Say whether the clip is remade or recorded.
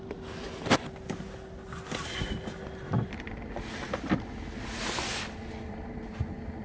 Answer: recorded